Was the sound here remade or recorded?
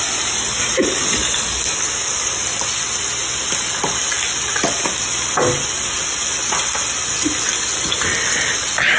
recorded